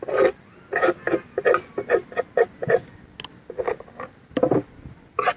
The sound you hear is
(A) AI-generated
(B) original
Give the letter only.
B